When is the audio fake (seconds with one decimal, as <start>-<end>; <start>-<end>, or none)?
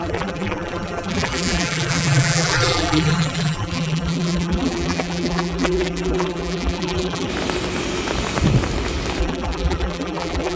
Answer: 0.0-7.3; 9.2-10.6